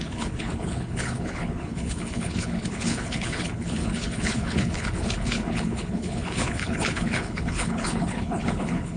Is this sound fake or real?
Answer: fake